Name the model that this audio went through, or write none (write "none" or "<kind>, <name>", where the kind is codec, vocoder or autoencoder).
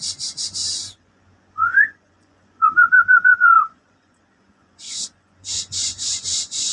vocoder, Vocos